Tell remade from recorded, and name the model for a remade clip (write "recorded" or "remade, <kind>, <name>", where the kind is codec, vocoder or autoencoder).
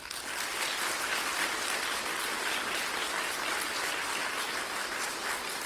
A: recorded